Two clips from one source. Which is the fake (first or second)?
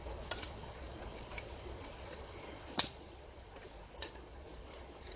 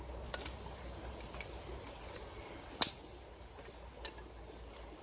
first